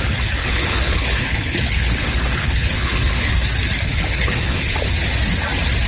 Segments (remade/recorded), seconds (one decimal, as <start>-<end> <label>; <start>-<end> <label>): 0.0-0.4 recorded; 0.4-3.3 remade; 3.3-3.9 recorded; 3.9-4.6 remade; 4.6-5.9 recorded